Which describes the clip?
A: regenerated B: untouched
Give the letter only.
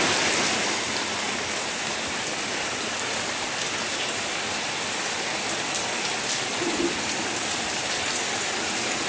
A